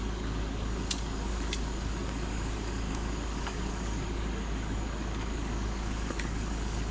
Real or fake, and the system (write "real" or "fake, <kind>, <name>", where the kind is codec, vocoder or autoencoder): fake, codec, DAC